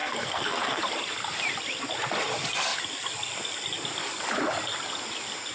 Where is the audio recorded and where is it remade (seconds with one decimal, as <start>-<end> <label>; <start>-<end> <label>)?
0.0-0.8 remade; 0.8-5.5 recorded